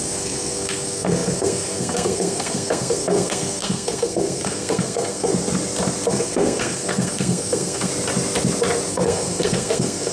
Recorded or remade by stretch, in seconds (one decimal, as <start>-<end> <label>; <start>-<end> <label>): 0.0-5.3 remade; 5.3-6.1 recorded; 6.1-7.9 remade; 7.9-8.9 recorded; 8.9-10.1 remade